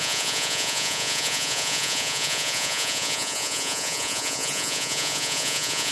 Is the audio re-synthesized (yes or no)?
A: yes